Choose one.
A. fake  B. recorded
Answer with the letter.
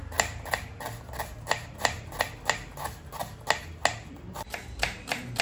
B